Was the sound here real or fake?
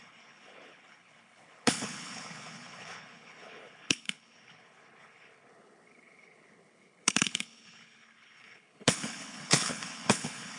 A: fake